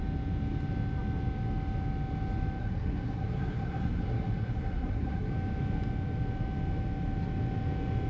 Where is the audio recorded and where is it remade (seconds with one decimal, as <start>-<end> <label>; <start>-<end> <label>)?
0.0-2.6 recorded; 2.6-5.3 remade; 5.3-8.1 recorded